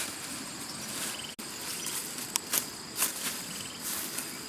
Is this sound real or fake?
real